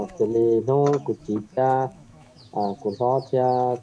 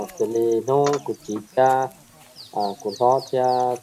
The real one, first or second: second